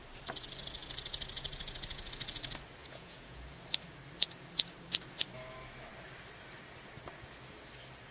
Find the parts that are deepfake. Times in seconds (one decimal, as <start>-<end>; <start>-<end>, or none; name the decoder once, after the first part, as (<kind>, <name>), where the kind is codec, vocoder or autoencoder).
2.8-3.4 (vocoder, Vocos)